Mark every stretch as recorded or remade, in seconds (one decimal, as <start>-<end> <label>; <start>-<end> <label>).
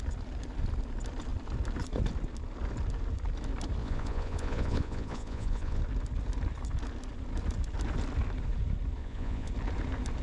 0.0-3.8 recorded; 3.8-5.8 remade; 5.8-9.0 recorded; 9.0-9.5 remade; 9.5-10.2 recorded